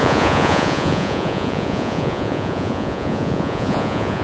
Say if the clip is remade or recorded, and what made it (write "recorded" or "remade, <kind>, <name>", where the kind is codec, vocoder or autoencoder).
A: remade, vocoder, Vocos